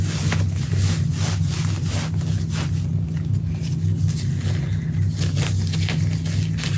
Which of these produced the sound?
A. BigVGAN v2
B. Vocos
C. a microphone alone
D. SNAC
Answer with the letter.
C